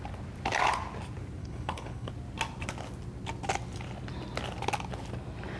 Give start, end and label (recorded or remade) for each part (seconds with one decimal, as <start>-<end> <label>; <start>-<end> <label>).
0.0-1.4 recorded; 1.4-2.1 remade; 2.1-5.6 recorded